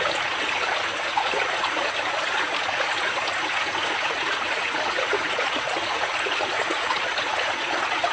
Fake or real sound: fake